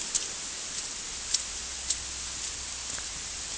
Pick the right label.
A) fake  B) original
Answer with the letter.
B